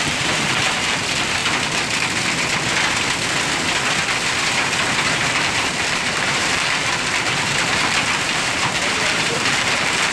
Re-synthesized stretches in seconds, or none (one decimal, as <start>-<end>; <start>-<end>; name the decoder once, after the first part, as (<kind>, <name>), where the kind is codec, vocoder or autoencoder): 0.0-1.4 (vocoder, BigVGAN v2); 5.1-10.1